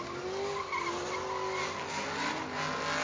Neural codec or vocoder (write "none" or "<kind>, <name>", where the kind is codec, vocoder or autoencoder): none